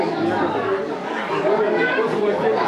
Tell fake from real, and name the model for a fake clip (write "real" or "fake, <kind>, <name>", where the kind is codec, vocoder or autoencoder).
fake, codec, DAC